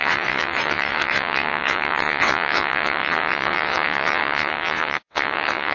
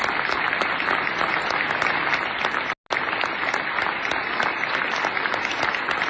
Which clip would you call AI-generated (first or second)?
first